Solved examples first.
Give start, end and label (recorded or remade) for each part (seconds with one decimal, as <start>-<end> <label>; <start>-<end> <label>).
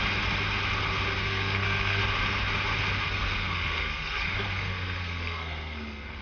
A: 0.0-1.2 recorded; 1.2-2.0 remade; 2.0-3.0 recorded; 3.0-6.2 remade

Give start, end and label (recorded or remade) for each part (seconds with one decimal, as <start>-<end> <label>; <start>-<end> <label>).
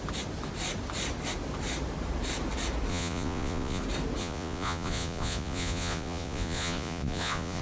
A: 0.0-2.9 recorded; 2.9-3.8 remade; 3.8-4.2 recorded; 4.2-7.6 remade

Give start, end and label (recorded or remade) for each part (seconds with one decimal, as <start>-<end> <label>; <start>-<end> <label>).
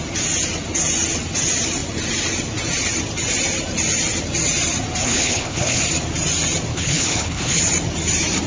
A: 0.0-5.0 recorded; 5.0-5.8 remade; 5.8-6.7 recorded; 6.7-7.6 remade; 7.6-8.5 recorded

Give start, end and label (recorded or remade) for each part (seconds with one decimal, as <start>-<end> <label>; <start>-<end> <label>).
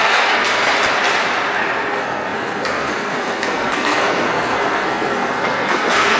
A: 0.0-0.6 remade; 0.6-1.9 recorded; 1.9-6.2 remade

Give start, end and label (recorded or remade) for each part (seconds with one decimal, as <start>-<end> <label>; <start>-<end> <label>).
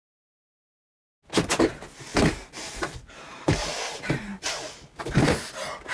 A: 0.0-2.1 recorded; 2.1-4.5 remade; 4.5-5.9 recorded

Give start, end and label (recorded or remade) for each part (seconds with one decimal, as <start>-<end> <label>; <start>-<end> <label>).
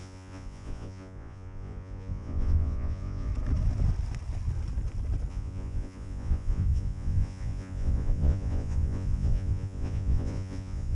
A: 0.0-3.3 remade; 3.3-5.3 recorded; 5.3-10.9 remade